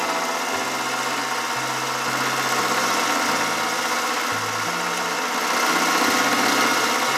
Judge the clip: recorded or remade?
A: recorded